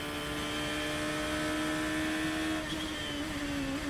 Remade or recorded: recorded